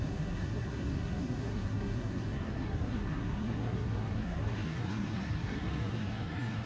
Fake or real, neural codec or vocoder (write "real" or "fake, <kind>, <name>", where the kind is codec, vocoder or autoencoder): fake, codec, SNAC